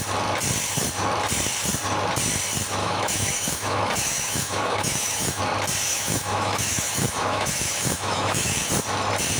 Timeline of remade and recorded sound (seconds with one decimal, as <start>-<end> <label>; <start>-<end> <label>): 0.0-2.8 recorded; 2.8-5.4 remade; 5.4-5.9 recorded; 5.9-8.7 remade; 8.7-9.4 recorded